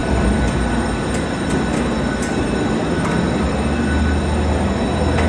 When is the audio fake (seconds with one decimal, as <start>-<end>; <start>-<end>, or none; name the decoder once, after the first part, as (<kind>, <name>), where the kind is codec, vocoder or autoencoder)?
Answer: none